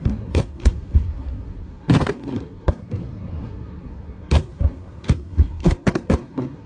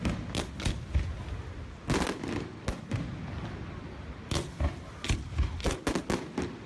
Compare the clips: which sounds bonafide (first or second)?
second